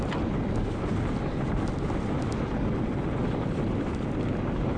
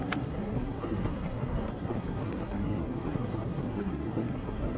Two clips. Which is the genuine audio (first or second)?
first